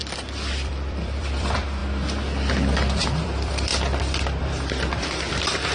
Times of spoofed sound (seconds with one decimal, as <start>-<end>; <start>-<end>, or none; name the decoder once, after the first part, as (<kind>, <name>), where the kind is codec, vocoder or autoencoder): 0.0-1.8 (vocoder, BigVGAN v2); 3.0-3.7; 4.4-5.7